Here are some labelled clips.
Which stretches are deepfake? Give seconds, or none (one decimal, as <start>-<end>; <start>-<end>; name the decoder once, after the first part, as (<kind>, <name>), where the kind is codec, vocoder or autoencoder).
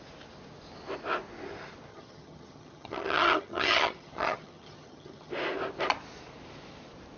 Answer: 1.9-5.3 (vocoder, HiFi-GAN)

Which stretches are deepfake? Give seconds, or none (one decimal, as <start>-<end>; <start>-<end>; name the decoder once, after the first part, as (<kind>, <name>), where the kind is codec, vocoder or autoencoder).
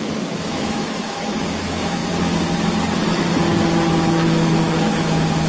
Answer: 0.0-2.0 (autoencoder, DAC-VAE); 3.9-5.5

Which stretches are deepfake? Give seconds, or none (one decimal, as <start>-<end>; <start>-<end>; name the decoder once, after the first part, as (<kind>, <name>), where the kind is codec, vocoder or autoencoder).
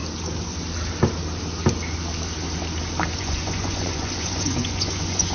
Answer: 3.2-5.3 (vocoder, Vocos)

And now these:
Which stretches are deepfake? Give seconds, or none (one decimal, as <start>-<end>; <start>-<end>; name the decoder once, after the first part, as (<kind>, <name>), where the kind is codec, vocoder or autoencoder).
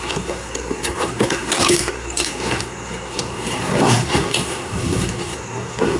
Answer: 0.0-6.0 (codec, SNAC)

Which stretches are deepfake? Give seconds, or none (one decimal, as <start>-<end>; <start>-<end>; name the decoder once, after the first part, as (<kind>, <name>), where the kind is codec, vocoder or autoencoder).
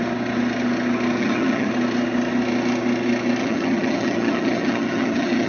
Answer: 1.2-1.7 (vocoder, HiFi-GAN); 3.4-5.5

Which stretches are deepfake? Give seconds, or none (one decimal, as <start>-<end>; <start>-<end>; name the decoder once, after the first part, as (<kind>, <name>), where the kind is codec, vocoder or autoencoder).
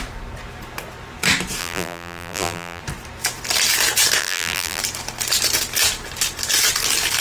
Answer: 1.6-2.8 (vocoder, BigVGAN v2); 4.2-4.8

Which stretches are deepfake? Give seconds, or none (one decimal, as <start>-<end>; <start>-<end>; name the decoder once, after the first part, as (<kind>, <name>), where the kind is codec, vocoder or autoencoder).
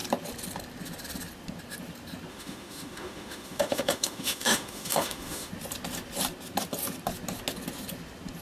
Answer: 2.3-5.5 (autoencoder, DAC-VAE)